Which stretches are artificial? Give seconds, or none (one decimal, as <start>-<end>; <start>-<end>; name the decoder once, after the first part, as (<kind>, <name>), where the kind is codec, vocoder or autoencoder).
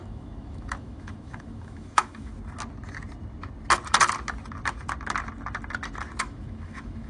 0.0-2.3 (autoencoder, DAC-VAE); 6.2-7.1